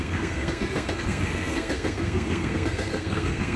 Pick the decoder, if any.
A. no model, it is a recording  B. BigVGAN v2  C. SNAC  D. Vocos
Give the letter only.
C